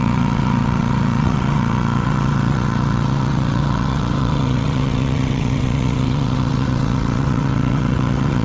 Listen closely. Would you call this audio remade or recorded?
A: remade